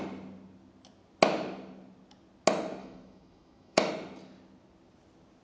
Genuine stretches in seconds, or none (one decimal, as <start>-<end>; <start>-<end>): 0.0-2.8; 3.9-5.4